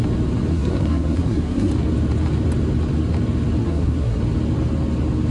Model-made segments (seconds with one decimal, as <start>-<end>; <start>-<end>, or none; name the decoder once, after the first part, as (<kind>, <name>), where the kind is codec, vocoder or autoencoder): 0.5-1.7 (codec, SNAC); 3.6-4.2